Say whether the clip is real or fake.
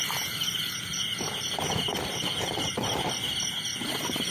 real